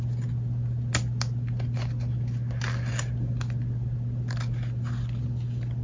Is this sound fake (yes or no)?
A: no